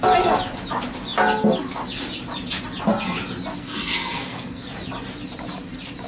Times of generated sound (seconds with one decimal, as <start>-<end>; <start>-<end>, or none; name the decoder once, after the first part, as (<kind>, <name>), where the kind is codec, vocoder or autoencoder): 3.5-4.6 (codec, SNAC)